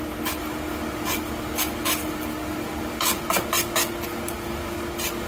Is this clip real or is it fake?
real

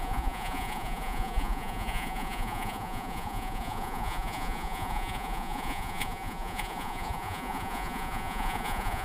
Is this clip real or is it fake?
fake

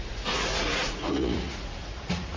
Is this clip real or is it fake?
fake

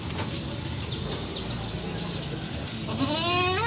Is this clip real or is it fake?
real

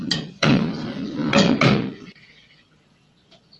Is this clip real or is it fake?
fake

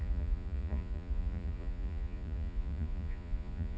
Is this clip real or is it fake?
fake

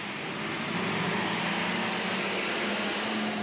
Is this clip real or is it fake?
real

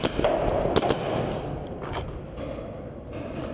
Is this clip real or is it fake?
real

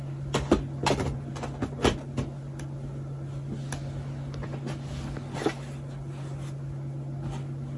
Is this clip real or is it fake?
real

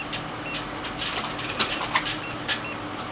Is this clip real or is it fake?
real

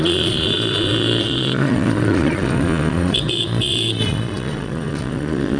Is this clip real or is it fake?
fake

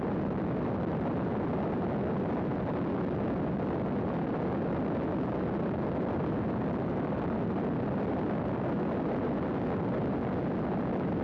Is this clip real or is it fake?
real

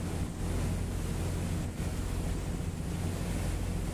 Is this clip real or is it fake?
real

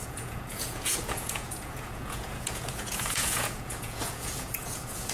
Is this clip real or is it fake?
fake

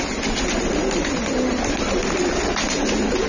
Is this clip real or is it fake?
real